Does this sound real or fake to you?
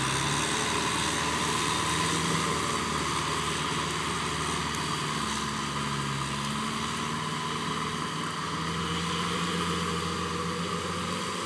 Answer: real